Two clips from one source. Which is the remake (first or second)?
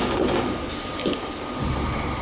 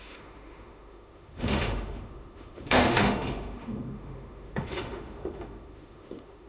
second